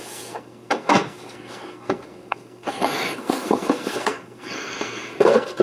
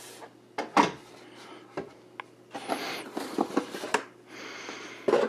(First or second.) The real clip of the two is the second